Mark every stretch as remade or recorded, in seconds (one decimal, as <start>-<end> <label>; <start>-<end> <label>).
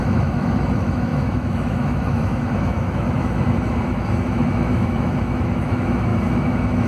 0.0-6.9 remade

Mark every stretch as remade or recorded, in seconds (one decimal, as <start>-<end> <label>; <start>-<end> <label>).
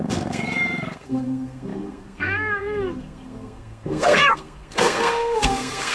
0.0-5.9 remade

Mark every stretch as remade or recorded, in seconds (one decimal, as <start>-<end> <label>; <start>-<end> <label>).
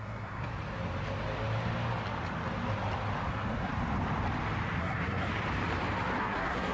0.0-0.5 remade; 0.5-3.3 recorded; 3.3-3.7 remade; 3.7-4.8 recorded; 4.8-5.3 remade; 5.3-6.2 recorded; 6.2-6.7 remade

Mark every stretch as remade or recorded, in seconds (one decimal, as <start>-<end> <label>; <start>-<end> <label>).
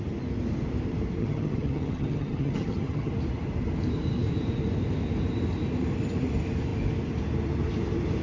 0.0-1.2 recorded; 1.2-3.1 remade; 3.1-8.2 recorded